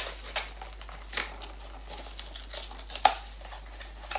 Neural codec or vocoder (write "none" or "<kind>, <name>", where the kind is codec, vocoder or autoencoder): none